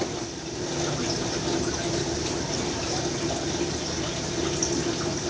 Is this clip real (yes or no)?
yes